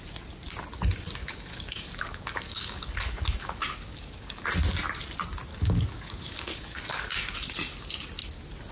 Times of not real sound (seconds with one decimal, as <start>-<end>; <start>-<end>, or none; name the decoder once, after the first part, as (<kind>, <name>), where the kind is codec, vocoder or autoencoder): 1.2-4.5 (codec, DAC); 5.5-7.5